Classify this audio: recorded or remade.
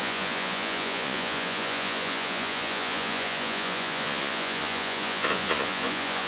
remade